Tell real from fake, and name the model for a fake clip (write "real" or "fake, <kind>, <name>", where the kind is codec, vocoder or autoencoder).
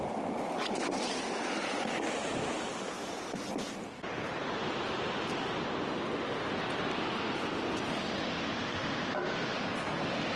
real